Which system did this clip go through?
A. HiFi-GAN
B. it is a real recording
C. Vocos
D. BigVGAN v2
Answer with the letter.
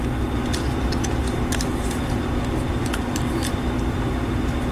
B